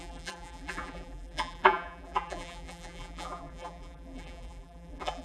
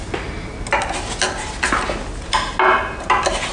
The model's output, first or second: first